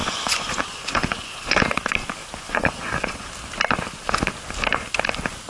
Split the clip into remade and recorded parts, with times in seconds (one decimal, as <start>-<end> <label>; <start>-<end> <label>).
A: 0.0-1.6 remade; 1.6-2.2 recorded; 2.2-3.3 remade; 3.3-5.5 recorded